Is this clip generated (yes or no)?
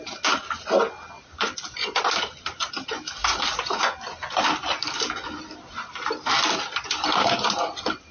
no